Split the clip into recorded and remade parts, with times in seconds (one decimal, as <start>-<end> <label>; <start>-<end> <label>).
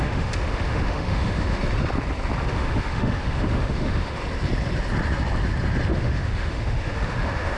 0.0-1.6 remade; 1.6-2.5 recorded; 2.5-4.2 remade; 4.2-5.9 recorded; 5.9-7.6 remade